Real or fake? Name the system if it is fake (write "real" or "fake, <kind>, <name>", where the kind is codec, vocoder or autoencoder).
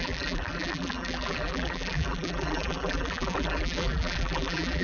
fake, vocoder, BigVGAN v2